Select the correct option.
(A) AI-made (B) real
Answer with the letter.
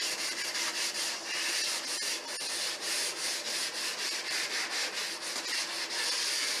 B